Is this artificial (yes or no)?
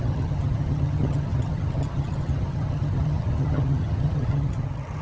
yes